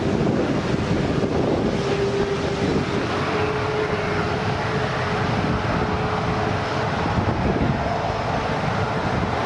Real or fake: real